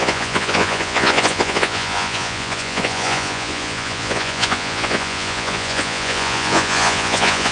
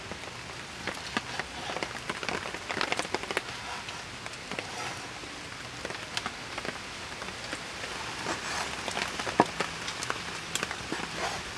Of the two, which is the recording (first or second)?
second